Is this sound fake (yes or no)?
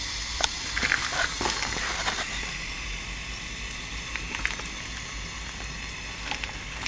no